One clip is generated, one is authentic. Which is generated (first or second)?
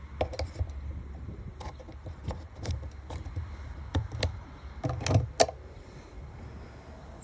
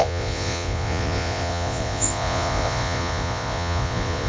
second